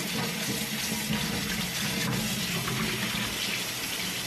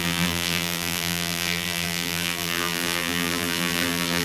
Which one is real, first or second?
first